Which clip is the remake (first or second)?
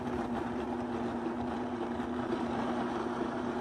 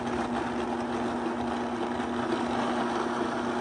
first